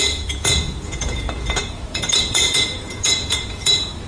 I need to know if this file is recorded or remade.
remade